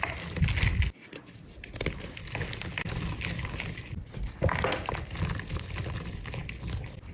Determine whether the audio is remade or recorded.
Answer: recorded